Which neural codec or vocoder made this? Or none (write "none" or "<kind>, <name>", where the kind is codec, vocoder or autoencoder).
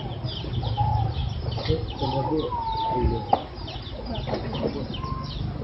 none